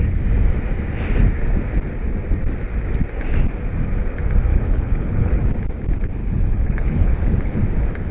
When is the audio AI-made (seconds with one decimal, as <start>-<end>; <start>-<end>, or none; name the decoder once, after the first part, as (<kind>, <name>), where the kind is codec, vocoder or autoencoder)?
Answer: 4.5-5.4 (codec, HILCodec); 6.2-7.6